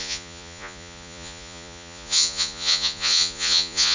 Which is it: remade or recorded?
remade